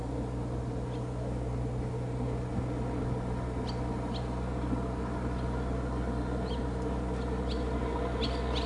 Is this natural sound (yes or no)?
yes